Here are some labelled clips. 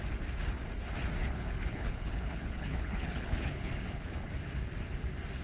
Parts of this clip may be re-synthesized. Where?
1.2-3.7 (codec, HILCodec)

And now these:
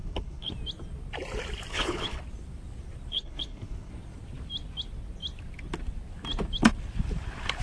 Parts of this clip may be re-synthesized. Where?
0.0-0.5 (codec, HILCodec); 1.7-2.2; 3.1-3.9

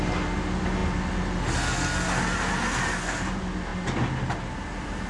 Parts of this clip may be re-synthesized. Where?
none

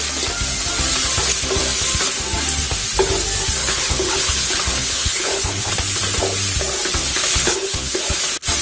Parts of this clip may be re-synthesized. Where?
3.6-5.7 (codec, HILCodec); 7.0-8.0

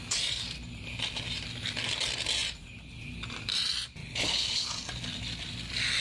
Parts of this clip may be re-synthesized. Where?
4.0-4.7 (codec, HILCodec)

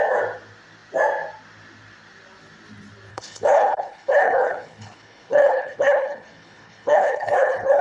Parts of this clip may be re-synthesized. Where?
3.1-7.8 (codec, HILCodec)

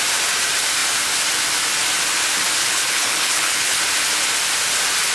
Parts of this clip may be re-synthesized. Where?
2.6-3.8 (codec, HILCodec)